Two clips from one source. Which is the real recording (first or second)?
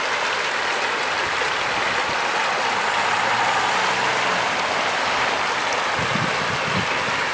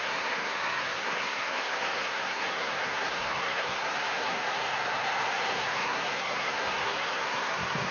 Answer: first